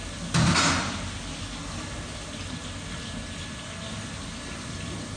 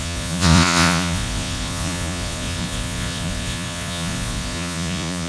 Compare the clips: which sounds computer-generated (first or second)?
second